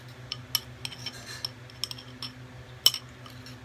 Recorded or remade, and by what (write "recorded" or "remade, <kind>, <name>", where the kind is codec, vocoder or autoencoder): recorded